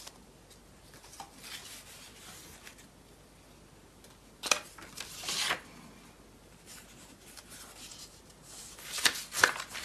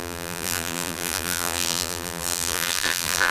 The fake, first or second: second